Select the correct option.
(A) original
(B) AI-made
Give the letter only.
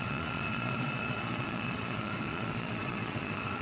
B